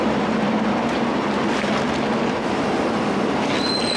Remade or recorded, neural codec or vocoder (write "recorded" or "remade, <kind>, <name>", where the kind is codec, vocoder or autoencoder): recorded